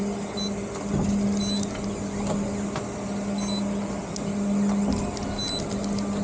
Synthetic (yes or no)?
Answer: no